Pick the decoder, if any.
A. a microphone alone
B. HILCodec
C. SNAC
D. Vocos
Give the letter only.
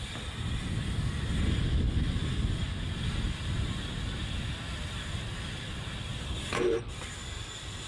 A